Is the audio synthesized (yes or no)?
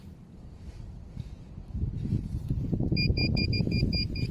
yes